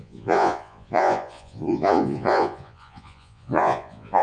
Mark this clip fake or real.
fake